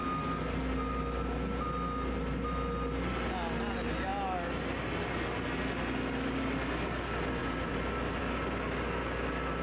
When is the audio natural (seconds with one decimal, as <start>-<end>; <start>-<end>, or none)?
0.0-7.4; 8.2-9.6